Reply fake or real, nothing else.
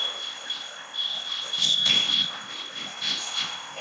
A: fake